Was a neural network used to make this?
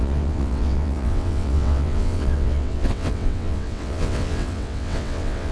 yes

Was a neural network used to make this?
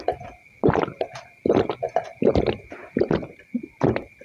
no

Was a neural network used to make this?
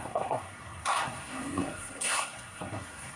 yes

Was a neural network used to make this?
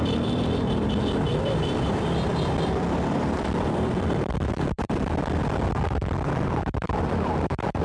yes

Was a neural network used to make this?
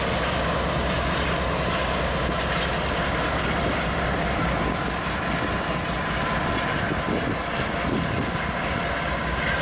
no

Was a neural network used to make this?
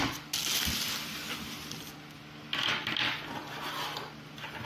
no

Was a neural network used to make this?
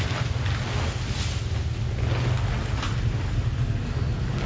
no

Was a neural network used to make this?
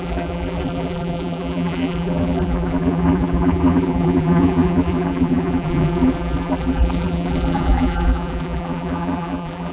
yes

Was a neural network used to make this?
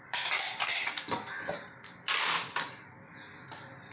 yes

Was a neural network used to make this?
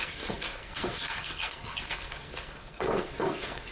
yes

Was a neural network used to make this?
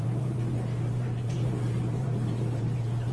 yes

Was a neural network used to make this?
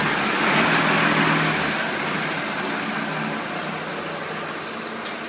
no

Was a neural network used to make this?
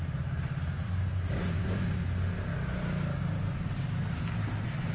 no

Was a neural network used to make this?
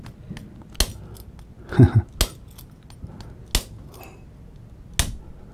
no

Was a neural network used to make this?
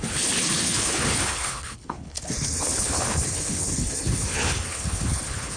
yes